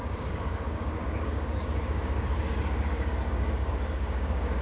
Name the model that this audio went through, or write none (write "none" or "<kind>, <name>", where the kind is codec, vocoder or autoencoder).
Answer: codec, DAC